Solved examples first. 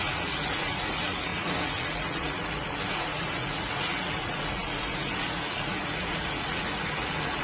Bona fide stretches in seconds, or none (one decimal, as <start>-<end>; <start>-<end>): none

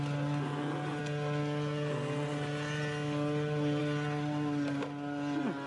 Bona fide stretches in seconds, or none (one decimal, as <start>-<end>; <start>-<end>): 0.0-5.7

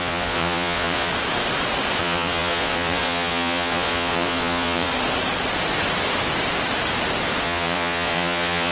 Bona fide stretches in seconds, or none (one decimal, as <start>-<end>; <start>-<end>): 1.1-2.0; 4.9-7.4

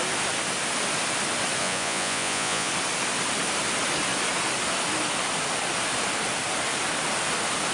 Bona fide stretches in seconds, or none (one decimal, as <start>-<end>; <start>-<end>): 0.0-1.6; 2.7-7.7

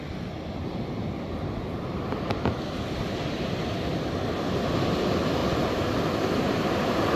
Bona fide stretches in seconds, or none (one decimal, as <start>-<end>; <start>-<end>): 0.0-7.2

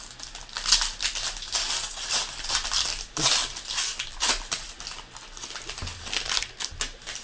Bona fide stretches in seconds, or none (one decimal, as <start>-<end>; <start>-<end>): 0.0-7.2

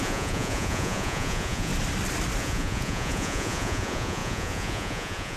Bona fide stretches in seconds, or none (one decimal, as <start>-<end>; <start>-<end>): 1.7-2.4